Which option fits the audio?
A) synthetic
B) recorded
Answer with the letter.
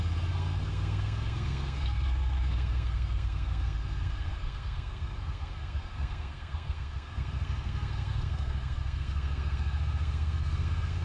A